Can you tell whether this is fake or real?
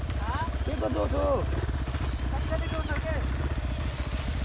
real